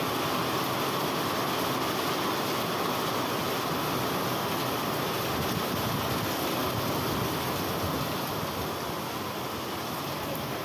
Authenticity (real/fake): real